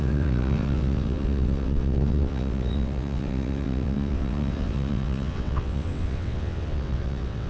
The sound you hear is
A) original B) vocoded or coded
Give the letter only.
B